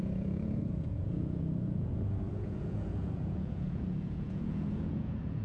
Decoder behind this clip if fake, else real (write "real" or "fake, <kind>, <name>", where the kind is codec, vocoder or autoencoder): fake, vocoder, Vocos